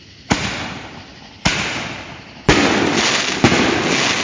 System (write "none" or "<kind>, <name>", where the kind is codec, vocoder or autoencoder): none